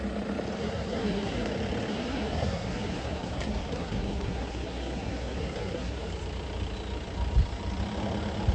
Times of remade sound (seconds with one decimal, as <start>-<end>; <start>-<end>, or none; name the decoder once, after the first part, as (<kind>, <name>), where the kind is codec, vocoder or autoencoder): 0.6-1.5 (codec, SNAC); 1.9-6.1